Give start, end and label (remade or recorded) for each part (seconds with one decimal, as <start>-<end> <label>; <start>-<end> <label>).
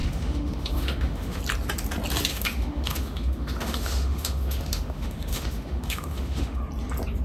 0.0-1.4 remade; 1.4-2.3 recorded; 2.3-6.6 remade; 6.6-7.2 recorded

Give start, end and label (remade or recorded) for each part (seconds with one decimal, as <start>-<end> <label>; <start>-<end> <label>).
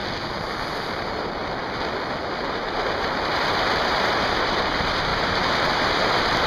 0.0-0.9 recorded; 0.9-1.4 remade; 1.4-2.4 recorded; 2.4-6.5 remade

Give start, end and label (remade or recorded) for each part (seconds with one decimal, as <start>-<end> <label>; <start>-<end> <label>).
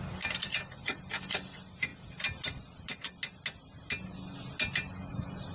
0.0-0.5 recorded; 0.5-1.9 remade; 1.9-5.1 recorded; 5.1-5.5 remade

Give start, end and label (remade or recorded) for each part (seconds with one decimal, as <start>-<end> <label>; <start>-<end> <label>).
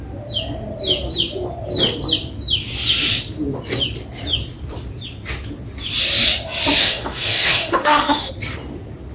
0.0-6.8 recorded; 6.8-8.3 remade; 8.3-9.1 recorded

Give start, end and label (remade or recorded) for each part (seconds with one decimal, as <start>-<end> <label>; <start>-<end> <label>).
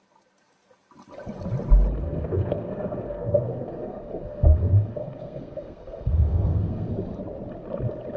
0.0-2.0 recorded; 2.0-6.9 remade; 6.9-8.2 recorded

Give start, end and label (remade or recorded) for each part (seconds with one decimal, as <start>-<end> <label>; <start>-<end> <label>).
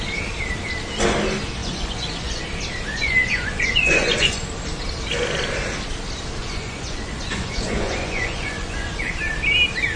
0.0-1.6 recorded; 1.6-2.4 remade; 2.4-2.9 recorded; 2.9-4.4 remade; 4.4-6.4 recorded; 6.4-9.1 remade; 9.1-10.0 recorded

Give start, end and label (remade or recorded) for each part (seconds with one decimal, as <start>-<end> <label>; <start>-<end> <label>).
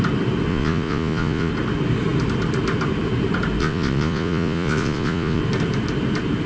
0.0-0.5 recorded; 0.5-1.5 remade; 1.5-3.6 recorded; 3.6-5.4 remade; 5.4-6.5 recorded